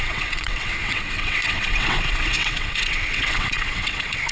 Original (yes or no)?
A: no